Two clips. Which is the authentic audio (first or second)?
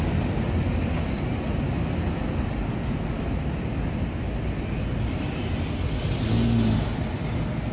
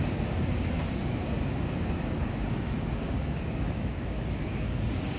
first